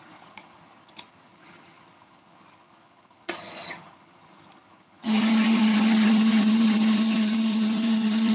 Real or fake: fake